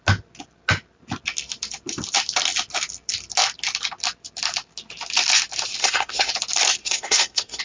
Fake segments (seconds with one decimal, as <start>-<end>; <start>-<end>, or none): 5.8-6.3; 6.8-7.6